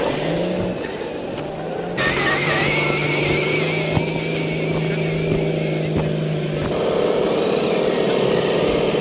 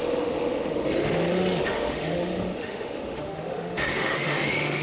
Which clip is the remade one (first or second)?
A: second